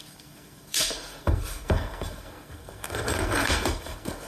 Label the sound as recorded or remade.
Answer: remade